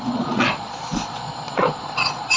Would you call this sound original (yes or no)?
no